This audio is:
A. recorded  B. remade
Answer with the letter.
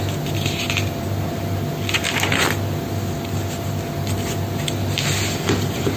A